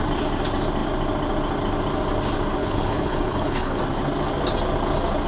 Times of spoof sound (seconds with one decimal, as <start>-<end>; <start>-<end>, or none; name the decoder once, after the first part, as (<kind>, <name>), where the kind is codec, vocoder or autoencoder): 2.6-3.8 (codec, HILCodec)